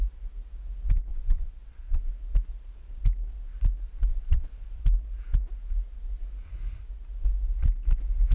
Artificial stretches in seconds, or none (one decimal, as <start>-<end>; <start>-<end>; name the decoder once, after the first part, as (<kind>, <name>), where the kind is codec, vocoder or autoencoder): 1.1-2.1 (vocoder, WaveNeXt); 4.1-4.8